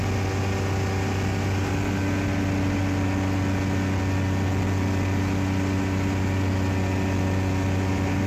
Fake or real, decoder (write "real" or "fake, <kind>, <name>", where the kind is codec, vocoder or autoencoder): real